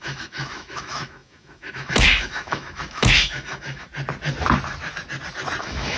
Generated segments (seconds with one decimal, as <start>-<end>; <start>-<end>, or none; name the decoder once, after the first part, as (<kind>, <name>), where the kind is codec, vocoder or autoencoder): 0.0-3.9 (autoencoder, DAC-VAE); 5.6-6.0